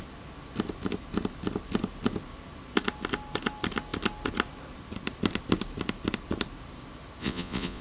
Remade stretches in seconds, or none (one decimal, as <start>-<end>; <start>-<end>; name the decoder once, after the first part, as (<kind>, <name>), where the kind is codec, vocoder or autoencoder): 7.2-7.8 (vocoder, Vocos)